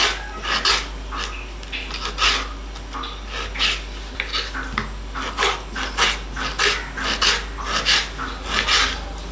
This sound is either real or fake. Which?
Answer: real